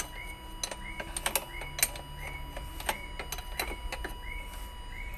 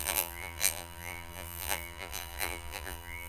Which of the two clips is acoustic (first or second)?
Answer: first